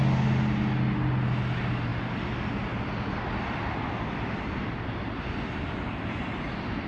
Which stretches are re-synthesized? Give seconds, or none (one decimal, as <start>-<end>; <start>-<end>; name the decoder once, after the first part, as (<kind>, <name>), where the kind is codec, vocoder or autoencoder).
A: none